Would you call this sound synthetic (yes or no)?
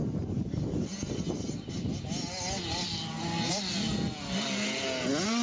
no